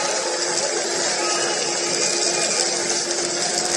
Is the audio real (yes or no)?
yes